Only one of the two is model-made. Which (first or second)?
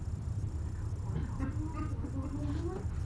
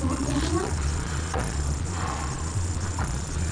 second